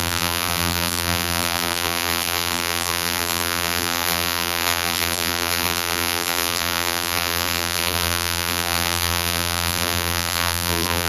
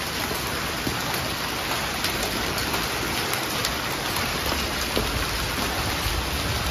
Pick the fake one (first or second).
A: first